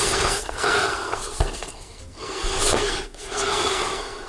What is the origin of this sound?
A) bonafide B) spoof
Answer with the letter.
B